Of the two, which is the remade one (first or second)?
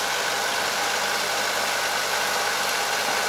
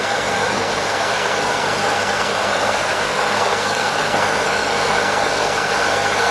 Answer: second